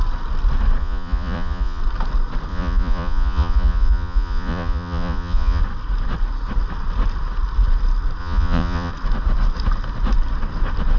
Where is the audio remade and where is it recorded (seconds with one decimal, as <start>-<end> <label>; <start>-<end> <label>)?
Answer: 0.0-0.8 recorded; 0.8-1.8 remade; 1.8-2.5 recorded; 2.5-5.6 remade; 5.6-8.2 recorded; 8.2-8.9 remade; 8.9-11.0 recorded